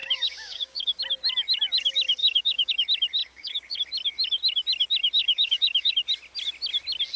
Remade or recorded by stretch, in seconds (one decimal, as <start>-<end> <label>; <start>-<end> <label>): 0.0-1.0 remade; 1.0-2.2 recorded; 2.2-2.7 remade; 2.7-3.2 recorded; 3.2-3.8 remade; 3.8-5.2 recorded; 5.2-5.9 remade; 5.9-7.2 recorded